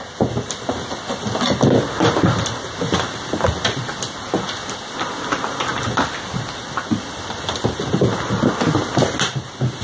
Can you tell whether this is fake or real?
real